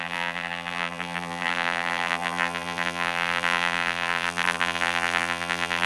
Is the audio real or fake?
fake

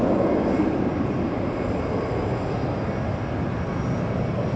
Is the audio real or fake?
real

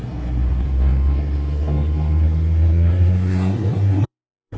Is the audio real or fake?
fake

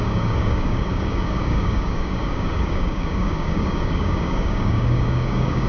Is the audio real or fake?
fake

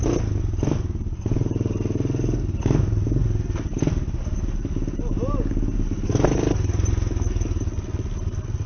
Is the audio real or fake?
real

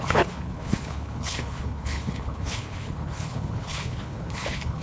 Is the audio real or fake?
fake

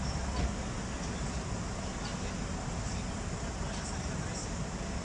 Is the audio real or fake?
real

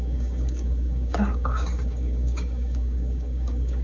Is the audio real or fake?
fake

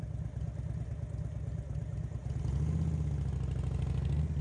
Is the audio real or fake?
real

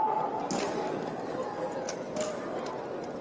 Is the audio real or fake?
real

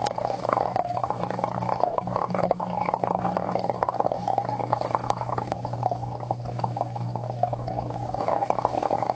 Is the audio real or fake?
fake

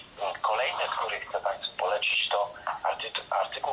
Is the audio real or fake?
fake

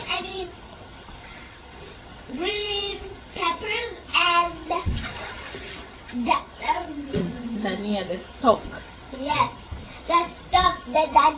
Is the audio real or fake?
fake